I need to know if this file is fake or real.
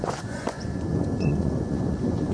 fake